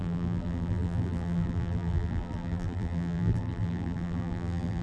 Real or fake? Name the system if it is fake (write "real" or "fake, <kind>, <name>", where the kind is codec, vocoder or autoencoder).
fake, vocoder, BigVGAN v2